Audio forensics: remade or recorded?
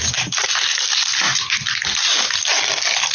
recorded